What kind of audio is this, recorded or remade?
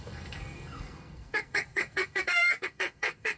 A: remade